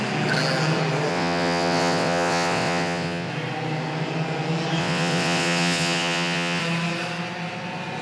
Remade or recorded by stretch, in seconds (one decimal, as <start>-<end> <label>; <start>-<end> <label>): 0.0-1.1 recorded; 1.1-3.3 remade; 3.3-4.8 recorded; 4.8-6.6 remade; 6.6-8.0 recorded